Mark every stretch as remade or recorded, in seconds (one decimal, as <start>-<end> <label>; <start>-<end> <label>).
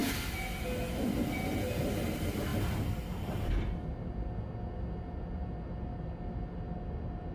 0.0-7.3 recorded